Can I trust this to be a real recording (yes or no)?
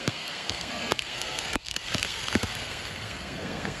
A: no